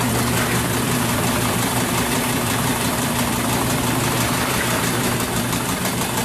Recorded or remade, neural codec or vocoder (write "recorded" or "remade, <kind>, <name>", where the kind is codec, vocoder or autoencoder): remade, vocoder, BigVGAN v2